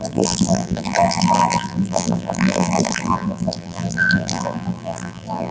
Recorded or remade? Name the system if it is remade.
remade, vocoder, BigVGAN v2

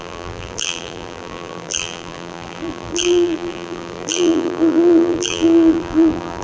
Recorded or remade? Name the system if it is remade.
remade, vocoder, BigVGAN v2